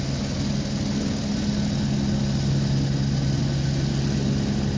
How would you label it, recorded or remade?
recorded